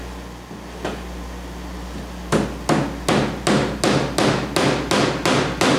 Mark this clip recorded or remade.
recorded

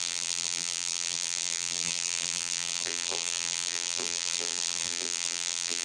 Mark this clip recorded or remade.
remade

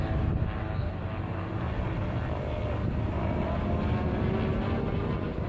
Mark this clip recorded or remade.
recorded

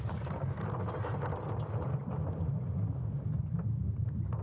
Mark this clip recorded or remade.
recorded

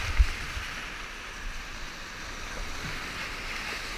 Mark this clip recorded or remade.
remade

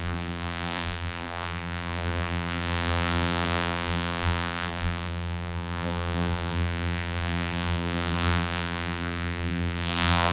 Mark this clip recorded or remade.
remade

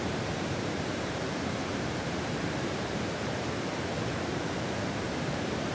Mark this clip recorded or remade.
remade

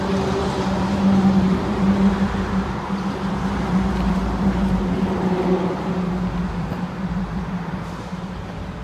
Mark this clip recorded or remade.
remade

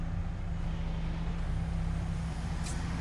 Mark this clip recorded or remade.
recorded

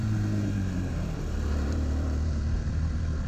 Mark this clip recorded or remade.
remade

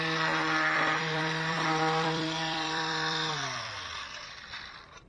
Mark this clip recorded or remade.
remade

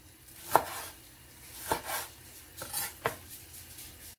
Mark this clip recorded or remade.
recorded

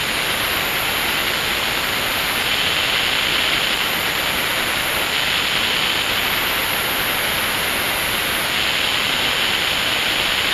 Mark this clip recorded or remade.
recorded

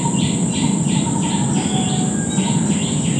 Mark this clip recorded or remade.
recorded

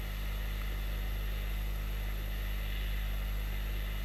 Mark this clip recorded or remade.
recorded